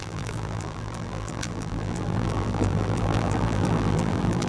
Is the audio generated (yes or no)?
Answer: yes